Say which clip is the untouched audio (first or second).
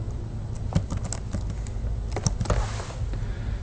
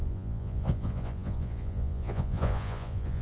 first